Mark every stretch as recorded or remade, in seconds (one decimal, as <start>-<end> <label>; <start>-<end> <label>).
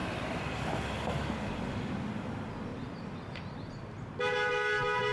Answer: 0.0-0.8 remade; 0.8-2.7 recorded; 2.7-3.6 remade; 3.6-5.1 recorded